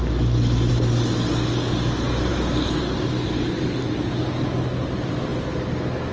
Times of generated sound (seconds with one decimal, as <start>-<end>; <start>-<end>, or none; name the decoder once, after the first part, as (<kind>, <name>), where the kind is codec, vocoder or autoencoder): none